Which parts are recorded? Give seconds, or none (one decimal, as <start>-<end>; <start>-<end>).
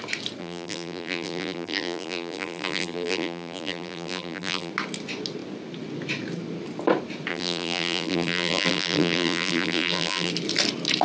0.0-0.4; 4.7-7.3; 10.3-11.0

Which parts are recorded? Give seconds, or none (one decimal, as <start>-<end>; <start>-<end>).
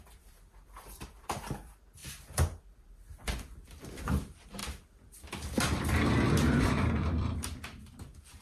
4.6-6.6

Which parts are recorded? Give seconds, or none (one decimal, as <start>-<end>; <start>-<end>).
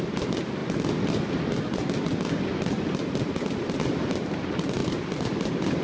0.0-4.8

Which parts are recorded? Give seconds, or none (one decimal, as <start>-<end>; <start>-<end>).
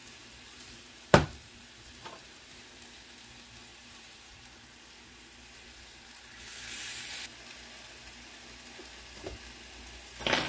2.6-3.7; 4.6-10.5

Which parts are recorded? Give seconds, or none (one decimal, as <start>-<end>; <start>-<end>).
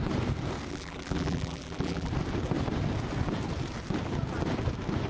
0.0-0.7; 2.1-5.1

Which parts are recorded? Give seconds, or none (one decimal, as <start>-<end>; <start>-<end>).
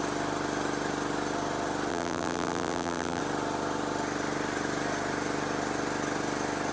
0.0-1.9; 3.2-6.7